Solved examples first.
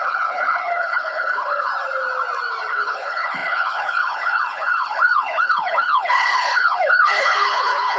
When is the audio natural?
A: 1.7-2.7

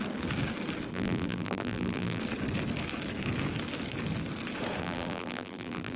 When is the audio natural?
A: 0.0-0.9; 2.2-4.8